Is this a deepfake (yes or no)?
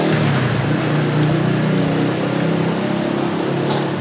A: no